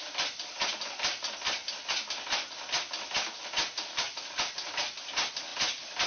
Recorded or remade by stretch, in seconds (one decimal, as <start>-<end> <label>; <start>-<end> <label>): 0.0-6.1 recorded